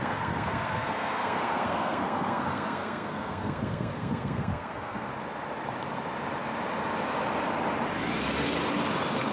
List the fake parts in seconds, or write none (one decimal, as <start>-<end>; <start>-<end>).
0.0-5.1